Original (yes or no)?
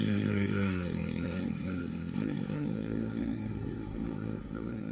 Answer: no